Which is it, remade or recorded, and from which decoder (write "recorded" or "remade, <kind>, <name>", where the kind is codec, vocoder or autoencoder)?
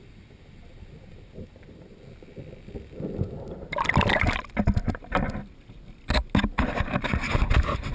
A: recorded